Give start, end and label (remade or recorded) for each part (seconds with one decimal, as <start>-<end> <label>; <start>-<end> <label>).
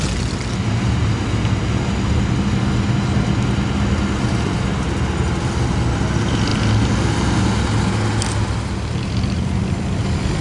0.0-10.4 recorded